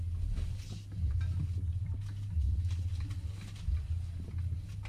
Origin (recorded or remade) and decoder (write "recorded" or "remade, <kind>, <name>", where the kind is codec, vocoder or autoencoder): recorded